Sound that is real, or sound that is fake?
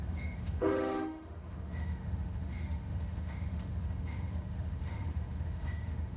fake